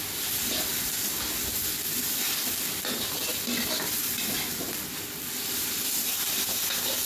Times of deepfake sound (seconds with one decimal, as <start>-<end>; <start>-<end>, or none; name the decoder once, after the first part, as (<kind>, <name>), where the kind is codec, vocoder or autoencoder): none